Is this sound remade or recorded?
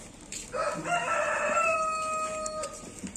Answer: recorded